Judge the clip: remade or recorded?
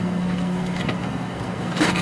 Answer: remade